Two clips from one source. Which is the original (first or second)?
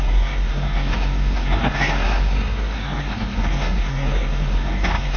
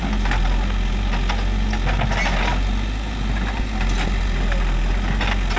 second